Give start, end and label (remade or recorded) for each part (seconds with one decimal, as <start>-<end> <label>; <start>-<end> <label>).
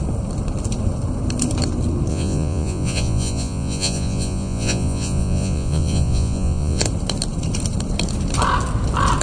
0.0-2.1 recorded; 2.1-6.8 remade; 6.8-9.2 recorded